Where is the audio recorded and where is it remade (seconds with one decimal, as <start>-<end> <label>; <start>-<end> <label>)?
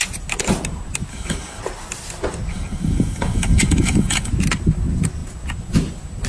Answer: 0.0-1.1 recorded; 1.1-1.6 remade; 1.6-2.5 recorded; 2.5-4.3 remade; 4.3-6.3 recorded